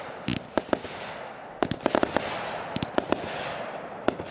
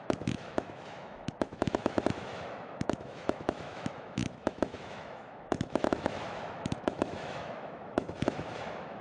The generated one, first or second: second